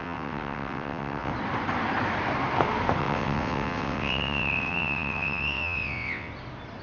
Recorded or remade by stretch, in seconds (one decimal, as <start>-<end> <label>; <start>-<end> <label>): 0.0-1.3 remade; 1.3-3.0 recorded; 3.0-6.3 remade; 6.3-6.8 recorded